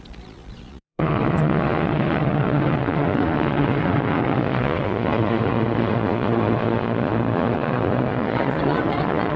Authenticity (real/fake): fake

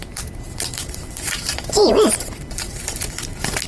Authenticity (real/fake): fake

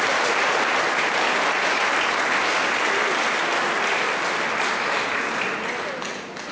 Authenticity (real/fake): real